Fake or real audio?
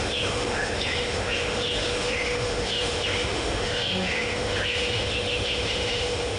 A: fake